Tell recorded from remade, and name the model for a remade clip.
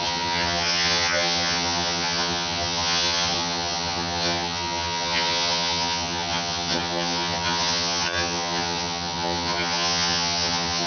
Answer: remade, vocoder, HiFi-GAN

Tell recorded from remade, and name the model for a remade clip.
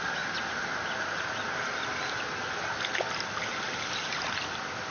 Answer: recorded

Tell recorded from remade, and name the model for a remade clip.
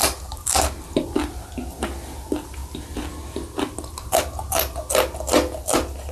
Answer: recorded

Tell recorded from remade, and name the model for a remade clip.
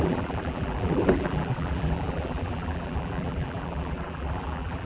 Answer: remade, vocoder, BigVGAN v2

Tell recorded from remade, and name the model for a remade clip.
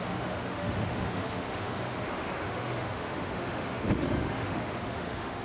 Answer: remade, autoencoder, DAC-VAE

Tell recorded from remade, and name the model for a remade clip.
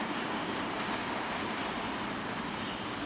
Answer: recorded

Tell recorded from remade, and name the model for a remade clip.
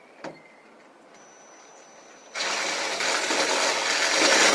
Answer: recorded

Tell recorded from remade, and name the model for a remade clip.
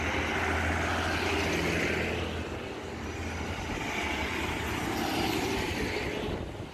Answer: recorded